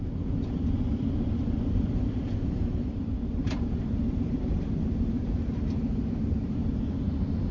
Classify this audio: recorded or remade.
remade